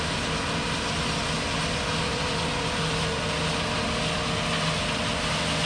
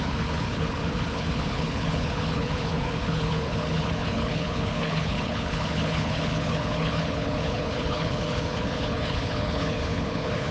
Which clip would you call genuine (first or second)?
first